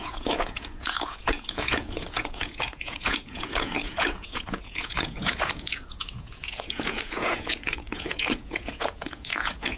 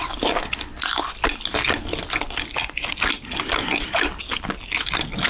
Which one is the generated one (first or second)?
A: first